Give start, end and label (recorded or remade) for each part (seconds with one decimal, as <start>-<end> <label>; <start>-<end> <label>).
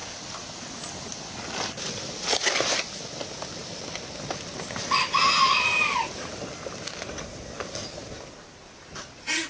0.0-9.5 recorded